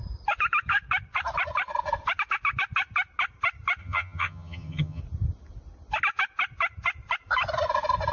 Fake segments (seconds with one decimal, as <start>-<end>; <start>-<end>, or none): 3.8-5.0